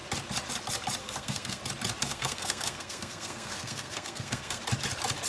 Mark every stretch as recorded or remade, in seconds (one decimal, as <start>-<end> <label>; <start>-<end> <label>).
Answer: 0.0-1.0 recorded; 1.0-1.6 remade; 1.6-2.0 recorded; 2.0-4.6 remade; 4.6-5.3 recorded